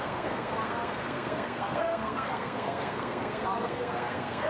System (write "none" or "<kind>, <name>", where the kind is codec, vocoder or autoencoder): codec, SNAC